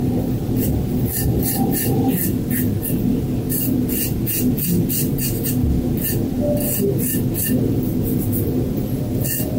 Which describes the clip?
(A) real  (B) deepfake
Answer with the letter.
A